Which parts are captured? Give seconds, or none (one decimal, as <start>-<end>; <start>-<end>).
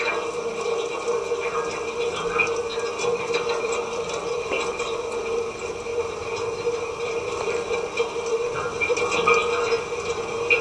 2.6-3.1; 5.9-7.2; 9.4-10.1